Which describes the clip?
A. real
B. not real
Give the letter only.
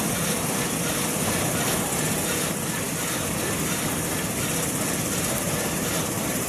A